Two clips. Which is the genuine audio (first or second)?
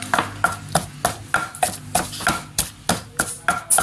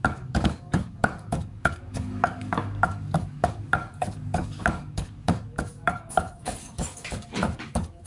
first